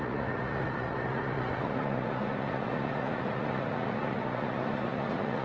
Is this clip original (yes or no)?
no